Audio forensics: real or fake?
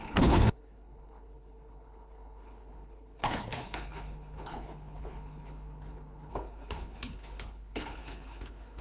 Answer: fake